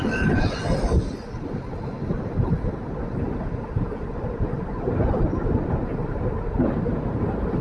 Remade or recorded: recorded